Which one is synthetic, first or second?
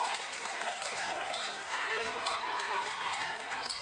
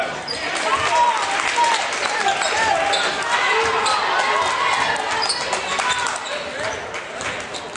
first